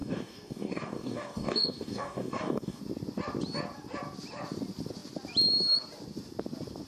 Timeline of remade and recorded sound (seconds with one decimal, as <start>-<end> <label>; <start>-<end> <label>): 0.0-2.8 remade; 2.8-6.9 recorded